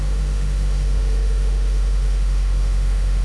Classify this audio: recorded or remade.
remade